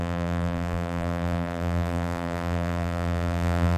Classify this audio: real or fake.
fake